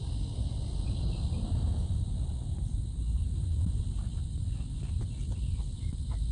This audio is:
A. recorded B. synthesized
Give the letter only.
A